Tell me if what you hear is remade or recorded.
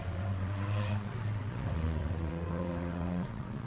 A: remade